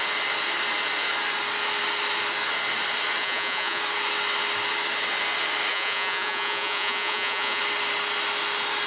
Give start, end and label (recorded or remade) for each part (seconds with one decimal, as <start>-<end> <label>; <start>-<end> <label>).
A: 0.0-3.2 recorded; 3.2-3.8 remade; 3.8-5.7 recorded; 5.7-7.6 remade; 7.6-8.9 recorded